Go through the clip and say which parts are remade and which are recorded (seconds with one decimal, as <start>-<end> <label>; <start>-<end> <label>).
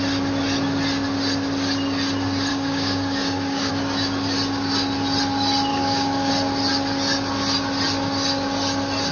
0.0-2.5 recorded; 2.5-3.7 remade; 3.7-5.7 recorded; 5.7-6.3 remade; 6.3-9.1 recorded